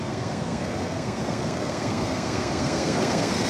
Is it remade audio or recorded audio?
remade